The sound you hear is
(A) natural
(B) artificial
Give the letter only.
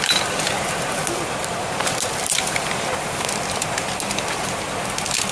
A